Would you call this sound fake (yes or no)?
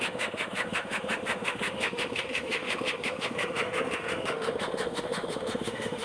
yes